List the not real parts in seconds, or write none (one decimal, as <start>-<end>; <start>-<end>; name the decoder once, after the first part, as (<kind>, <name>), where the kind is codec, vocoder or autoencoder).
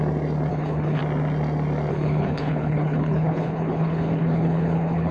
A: 0.5-1.0 (codec, HILCodec); 1.9-5.1